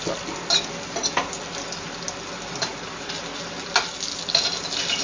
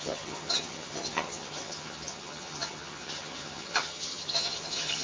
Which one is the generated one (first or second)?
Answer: second